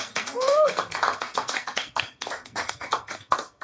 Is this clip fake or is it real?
fake